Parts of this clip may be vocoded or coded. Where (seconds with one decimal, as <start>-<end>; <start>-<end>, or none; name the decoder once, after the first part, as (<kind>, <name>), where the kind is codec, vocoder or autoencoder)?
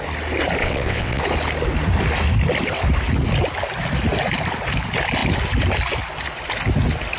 0.6-1.2 (vocoder, WaveNeXt)